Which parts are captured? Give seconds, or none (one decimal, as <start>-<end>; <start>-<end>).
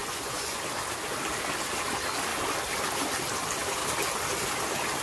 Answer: 0.6-5.0